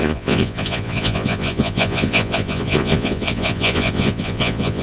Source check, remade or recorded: remade